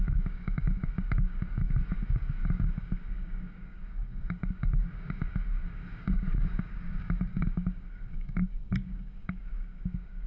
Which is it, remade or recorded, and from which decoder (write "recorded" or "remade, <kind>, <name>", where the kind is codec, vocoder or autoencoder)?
remade, codec, DAC